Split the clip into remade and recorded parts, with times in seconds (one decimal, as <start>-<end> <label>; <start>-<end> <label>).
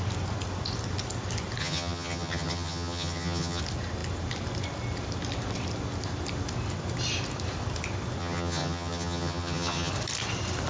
0.0-1.6 recorded; 1.6-3.6 remade; 3.6-8.2 recorded; 8.2-9.9 remade; 9.9-10.7 recorded